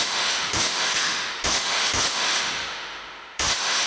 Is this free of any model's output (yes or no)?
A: no